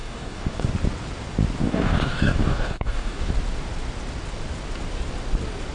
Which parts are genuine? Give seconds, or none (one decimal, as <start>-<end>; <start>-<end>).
0.7-1.6; 3.3-5.7